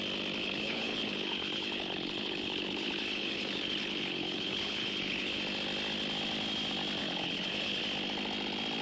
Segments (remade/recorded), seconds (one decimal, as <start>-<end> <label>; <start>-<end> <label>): 0.0-0.4 recorded; 0.4-5.4 remade; 5.4-7.0 recorded; 7.0-7.8 remade; 7.8-8.8 recorded